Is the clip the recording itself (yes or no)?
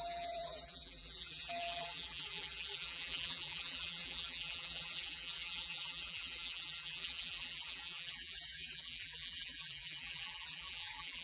no